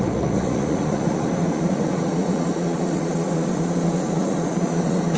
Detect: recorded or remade remade